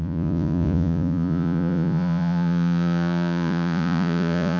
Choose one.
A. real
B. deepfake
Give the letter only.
B